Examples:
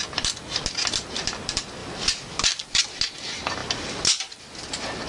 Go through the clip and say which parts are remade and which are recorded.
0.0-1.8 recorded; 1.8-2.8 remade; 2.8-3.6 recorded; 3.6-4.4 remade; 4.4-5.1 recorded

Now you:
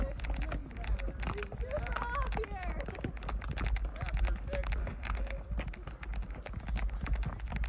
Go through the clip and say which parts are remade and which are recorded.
0.0-4.8 recorded; 4.8-5.4 remade; 5.4-7.7 recorded

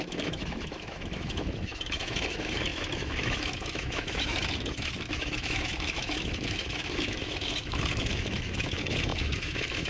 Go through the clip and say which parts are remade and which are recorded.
0.0-9.9 remade

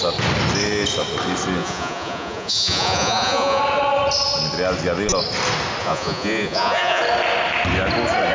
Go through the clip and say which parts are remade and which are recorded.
0.0-1.6 recorded; 1.6-3.6 remade; 3.6-5.8 recorded; 5.8-7.0 remade; 7.0-8.3 recorded

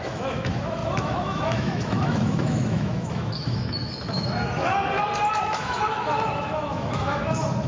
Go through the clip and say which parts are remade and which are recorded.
0.0-4.7 remade; 4.7-5.4 recorded; 5.4-7.7 remade

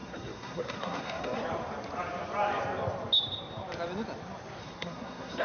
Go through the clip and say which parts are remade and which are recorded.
0.0-1.4 remade; 1.4-4.6 recorded; 4.6-5.4 remade

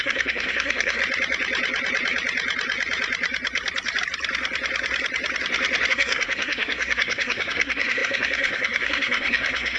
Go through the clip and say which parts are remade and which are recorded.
0.0-1.0 remade; 1.0-5.9 recorded; 5.9-9.8 remade

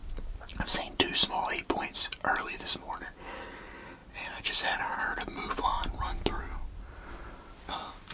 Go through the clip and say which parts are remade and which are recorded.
0.0-4.0 remade; 4.0-6.4 recorded; 6.4-8.1 remade